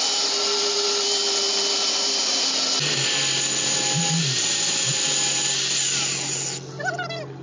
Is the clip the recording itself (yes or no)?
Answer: yes